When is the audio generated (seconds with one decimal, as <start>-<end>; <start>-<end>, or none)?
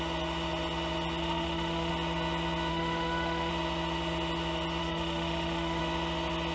1.2-1.9; 2.7-3.5; 4.8-5.8